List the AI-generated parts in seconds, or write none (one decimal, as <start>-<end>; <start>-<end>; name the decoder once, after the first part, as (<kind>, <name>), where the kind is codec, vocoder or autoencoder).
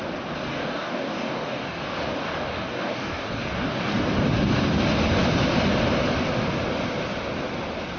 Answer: 0.5-4.0 (codec, DAC)